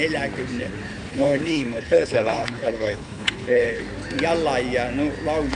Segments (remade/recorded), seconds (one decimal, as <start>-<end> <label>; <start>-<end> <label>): 0.0-1.1 recorded; 1.1-3.8 remade; 3.8-5.6 recorded